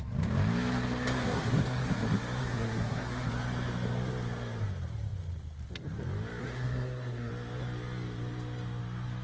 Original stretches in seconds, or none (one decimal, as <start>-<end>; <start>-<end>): 0.0-1.2; 1.9-2.4; 3.3-6.4; 7.3-9.2